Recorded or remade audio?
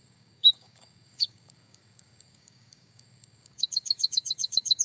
remade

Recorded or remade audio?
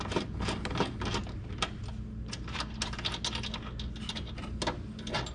recorded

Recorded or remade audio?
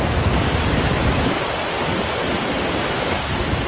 recorded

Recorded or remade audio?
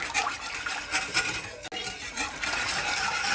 recorded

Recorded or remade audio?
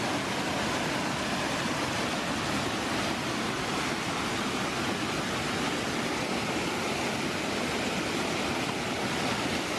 recorded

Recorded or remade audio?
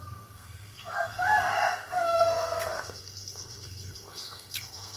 remade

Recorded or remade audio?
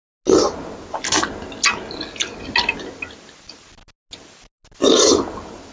recorded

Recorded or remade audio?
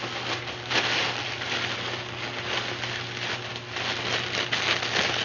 recorded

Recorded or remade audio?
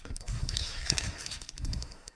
remade